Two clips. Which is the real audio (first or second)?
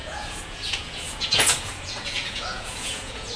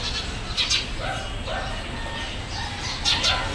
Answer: second